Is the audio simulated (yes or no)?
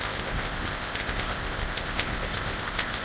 yes